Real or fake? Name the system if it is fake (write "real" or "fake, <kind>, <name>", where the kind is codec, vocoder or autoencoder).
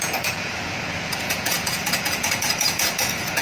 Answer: fake, vocoder, Vocos